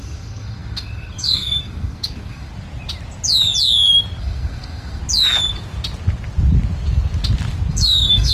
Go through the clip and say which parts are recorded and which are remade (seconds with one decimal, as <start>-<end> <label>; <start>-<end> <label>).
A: 0.0-2.5 remade; 2.5-4.2 recorded; 4.2-5.0 remade; 5.0-7.7 recorded; 7.7-8.3 remade